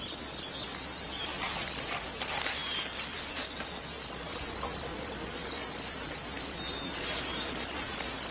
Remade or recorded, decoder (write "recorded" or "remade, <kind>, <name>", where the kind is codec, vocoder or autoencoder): recorded